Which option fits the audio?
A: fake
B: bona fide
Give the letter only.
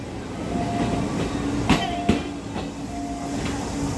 B